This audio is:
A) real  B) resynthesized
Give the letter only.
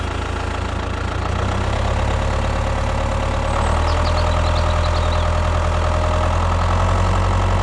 A